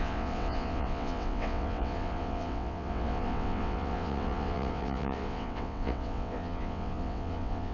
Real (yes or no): no